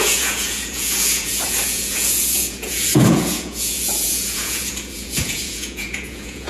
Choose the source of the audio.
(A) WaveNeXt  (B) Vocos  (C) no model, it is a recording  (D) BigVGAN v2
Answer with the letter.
B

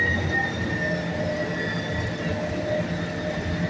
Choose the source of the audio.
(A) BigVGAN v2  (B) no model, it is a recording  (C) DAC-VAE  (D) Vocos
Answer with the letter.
B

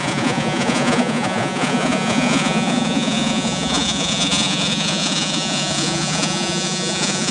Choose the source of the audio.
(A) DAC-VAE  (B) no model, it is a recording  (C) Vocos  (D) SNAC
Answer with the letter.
C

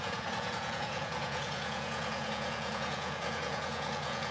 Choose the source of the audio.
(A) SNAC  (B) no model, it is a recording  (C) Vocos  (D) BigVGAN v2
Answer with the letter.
C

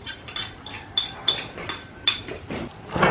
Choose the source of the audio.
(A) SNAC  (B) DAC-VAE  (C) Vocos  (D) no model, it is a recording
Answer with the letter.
D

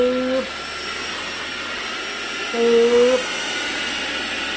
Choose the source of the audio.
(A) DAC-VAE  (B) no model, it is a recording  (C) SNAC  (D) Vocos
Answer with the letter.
B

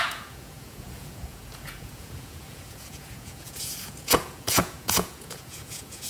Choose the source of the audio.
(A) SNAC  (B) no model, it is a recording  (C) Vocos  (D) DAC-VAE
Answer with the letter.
C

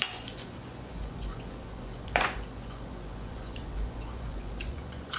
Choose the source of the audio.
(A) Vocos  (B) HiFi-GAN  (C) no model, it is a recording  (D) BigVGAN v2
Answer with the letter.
A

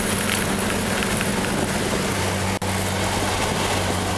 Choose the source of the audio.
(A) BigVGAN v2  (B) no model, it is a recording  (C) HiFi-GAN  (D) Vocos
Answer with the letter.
B